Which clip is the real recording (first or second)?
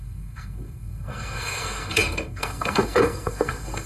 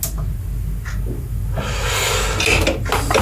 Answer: second